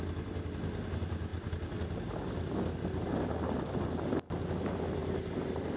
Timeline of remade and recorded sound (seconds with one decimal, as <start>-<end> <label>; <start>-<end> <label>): 0.0-5.8 recorded